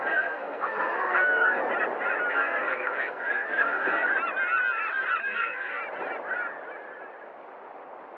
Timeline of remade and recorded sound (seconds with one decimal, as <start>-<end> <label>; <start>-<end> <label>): 0.0-1.6 remade; 1.6-2.3 recorded; 2.3-4.1 remade; 4.1-5.2 recorded; 5.2-5.8 remade; 5.8-8.2 recorded